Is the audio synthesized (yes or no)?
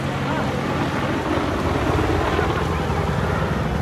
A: no